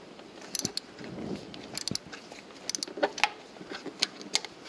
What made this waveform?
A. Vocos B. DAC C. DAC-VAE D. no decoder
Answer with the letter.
D